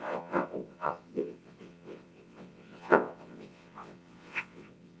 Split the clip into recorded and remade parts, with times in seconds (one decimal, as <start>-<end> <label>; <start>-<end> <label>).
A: 0.0-5.0 remade